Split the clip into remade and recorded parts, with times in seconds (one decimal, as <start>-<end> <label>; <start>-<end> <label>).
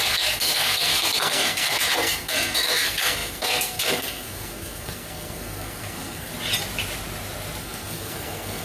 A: 0.0-6.3 remade; 6.3-7.6 recorded; 7.6-8.6 remade